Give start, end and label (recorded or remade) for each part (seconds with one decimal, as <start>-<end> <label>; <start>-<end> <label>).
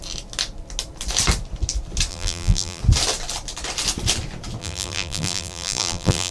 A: 0.0-2.1 recorded; 2.1-2.8 remade; 2.8-4.6 recorded; 4.6-6.3 remade